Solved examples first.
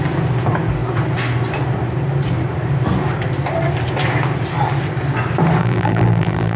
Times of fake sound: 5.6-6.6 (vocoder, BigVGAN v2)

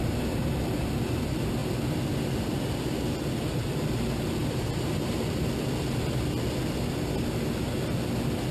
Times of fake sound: 4.4-5.4 (vocoder, BigVGAN v2)

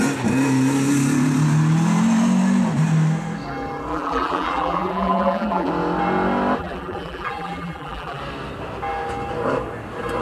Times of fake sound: 3.9-5.7 (vocoder, BigVGAN v2); 6.6-8.2

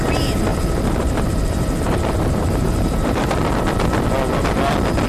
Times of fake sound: 0.5-3.6 (vocoder, BigVGAN v2)

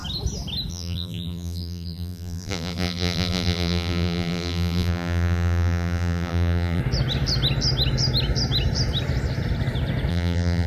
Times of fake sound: 0.7-6.8 (vocoder, BigVGAN v2); 10.1-10.7